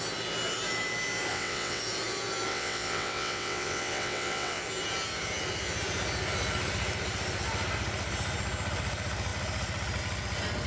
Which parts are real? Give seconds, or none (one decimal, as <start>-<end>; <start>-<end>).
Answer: 0.0-1.3; 1.8-2.5; 4.6-10.7